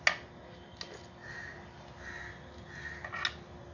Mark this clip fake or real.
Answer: real